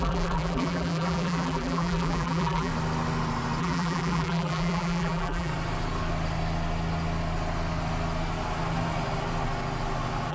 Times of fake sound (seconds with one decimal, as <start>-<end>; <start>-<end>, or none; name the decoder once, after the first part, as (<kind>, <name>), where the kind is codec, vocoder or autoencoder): 0.0-2.7 (vocoder, BigVGAN v2); 3.6-5.5

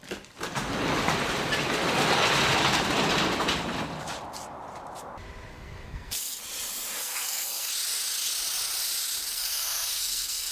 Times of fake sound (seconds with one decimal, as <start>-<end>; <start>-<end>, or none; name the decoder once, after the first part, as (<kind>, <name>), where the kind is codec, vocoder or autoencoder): 5.5-6.4 (codec, SNAC); 7.0-7.7; 9.3-10.5

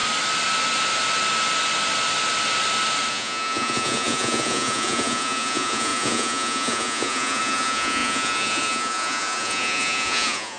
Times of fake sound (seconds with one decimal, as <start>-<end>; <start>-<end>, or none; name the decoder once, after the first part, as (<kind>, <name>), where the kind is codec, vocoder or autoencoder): 3.1-10.6 (vocoder, Vocos)

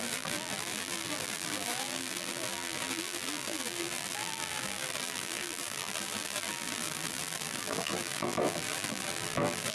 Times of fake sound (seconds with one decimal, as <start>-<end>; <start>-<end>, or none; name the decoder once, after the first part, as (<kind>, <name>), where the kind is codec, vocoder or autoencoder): 0.0-9.7 (vocoder, BigVGAN v2)

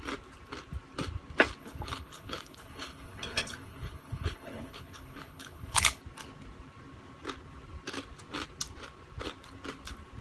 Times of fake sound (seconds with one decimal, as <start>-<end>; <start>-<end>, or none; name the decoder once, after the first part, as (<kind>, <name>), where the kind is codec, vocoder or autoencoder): 1.6-6.0 (codec, HILCodec)